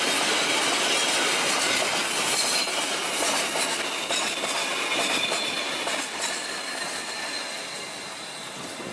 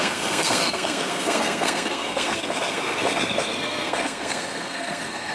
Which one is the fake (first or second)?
second